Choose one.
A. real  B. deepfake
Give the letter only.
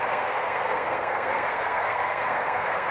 B